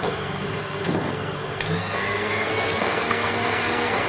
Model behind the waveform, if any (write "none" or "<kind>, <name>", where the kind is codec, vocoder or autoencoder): codec, SNAC